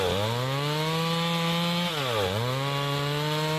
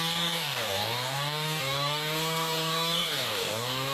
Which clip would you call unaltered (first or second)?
first